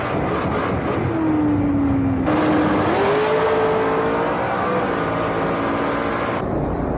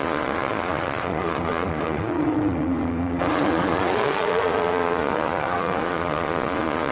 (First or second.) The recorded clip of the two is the first